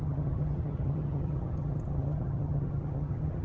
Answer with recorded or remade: remade